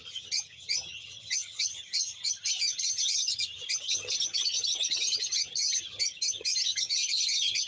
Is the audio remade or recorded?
remade